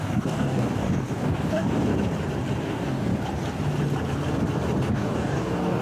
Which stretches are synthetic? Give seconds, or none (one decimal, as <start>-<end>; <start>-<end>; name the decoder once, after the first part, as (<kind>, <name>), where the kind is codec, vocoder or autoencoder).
0.0-1.9 (codec, DAC); 2.6-3.1; 4.9-5.8